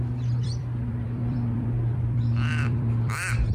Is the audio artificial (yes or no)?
yes